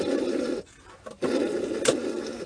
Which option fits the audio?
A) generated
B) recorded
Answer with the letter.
B